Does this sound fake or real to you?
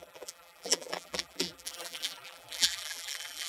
fake